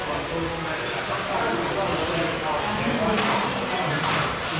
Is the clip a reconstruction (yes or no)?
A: no